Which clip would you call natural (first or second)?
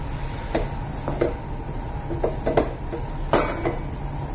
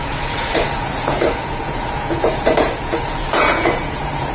first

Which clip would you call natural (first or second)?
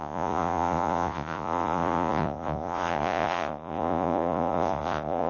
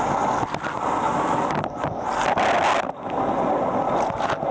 second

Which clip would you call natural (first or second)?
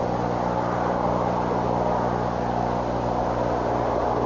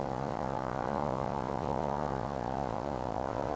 first